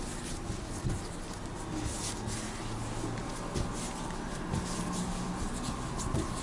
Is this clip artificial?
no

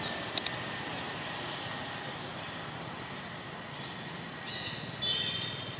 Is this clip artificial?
no